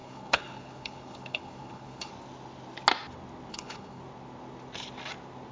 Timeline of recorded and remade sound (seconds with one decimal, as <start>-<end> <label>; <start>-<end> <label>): 0.0-2.1 remade; 2.1-3.5 recorded; 3.5-4.0 remade; 4.0-5.5 recorded